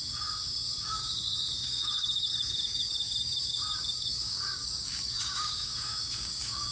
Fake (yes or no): yes